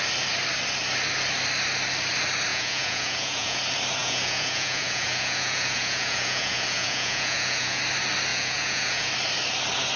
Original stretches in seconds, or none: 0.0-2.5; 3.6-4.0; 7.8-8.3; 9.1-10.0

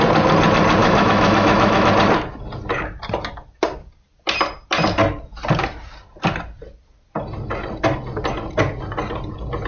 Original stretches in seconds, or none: 0.0-0.8; 1.9-9.7